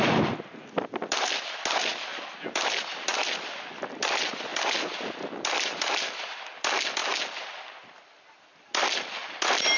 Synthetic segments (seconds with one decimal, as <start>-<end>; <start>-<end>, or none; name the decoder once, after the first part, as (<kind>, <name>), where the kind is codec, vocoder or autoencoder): 2.1-2.7 (vocoder, BigVGAN v2); 4.5-6.4